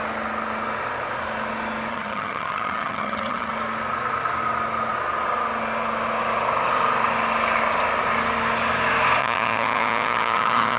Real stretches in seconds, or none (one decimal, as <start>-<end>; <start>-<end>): 0.0-1.9; 3.5-9.2